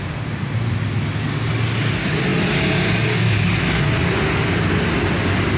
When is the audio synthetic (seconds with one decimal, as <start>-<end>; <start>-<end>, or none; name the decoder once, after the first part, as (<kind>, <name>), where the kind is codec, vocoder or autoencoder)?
none

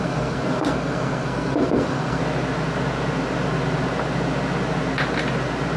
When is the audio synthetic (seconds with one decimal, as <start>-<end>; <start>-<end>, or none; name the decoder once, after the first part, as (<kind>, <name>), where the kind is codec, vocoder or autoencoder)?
0.0-2.2 (codec, SNAC)

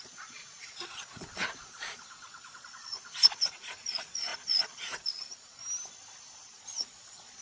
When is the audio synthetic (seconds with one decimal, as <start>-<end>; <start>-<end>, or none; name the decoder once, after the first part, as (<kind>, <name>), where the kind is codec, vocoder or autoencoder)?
0.0-5.6 (vocoder, Vocos); 6.3-7.4

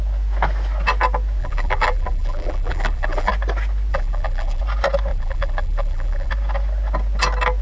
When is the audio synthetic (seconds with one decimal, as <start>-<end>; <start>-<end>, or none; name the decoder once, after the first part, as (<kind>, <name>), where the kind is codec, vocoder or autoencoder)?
1.4-3.3 (vocoder, BigVGAN v2); 3.9-4.6; 5.1-6.3